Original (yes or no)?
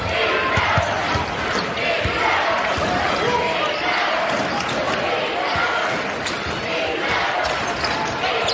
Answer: yes